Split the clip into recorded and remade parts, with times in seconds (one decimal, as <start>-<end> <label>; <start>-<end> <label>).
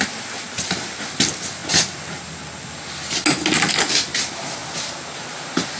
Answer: 0.0-5.8 recorded